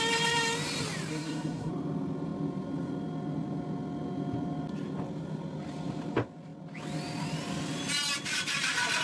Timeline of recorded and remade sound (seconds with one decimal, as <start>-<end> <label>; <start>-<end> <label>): 0.0-1.1 recorded; 1.1-1.7 remade; 1.7-9.0 recorded